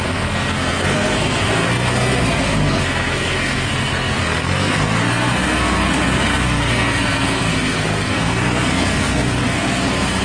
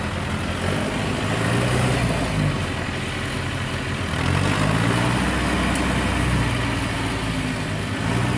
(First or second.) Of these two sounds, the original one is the second